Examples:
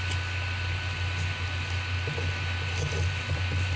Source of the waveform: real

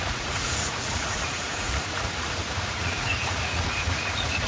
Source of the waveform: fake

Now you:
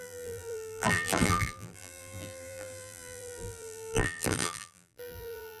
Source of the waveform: fake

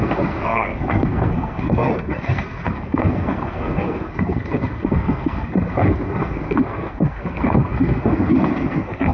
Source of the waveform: fake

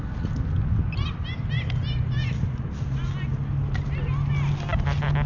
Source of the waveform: real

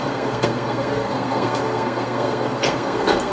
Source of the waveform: fake